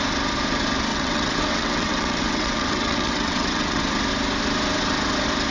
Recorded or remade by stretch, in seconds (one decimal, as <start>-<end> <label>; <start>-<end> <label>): 0.0-0.9 recorded; 0.9-3.8 remade; 3.8-5.5 recorded